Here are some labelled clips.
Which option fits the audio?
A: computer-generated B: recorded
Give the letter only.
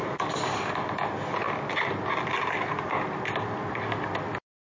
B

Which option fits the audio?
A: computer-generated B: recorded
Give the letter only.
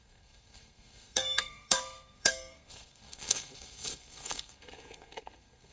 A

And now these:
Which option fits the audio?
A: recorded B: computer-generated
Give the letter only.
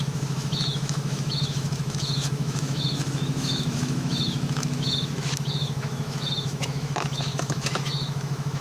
B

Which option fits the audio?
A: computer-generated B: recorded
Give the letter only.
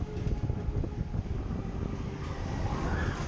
B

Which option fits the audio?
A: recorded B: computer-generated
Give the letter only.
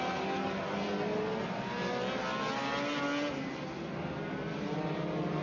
A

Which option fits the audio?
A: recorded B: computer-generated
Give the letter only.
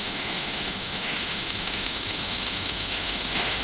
B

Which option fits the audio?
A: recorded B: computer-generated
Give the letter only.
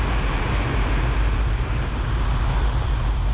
A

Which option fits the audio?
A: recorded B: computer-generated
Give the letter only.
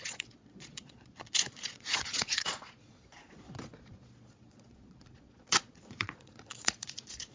B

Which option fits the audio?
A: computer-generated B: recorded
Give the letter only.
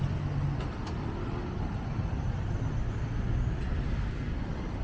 B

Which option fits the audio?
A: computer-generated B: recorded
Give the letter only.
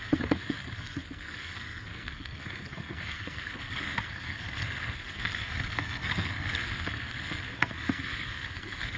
A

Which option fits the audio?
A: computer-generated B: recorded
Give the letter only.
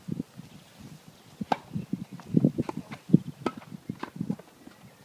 B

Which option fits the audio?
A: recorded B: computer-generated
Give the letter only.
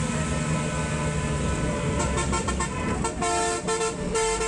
A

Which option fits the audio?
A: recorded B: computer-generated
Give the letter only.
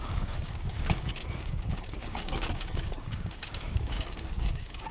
B